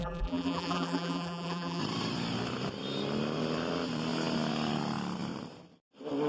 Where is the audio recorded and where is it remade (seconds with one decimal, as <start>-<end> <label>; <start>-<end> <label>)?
0.0-1.8 remade; 1.8-6.3 recorded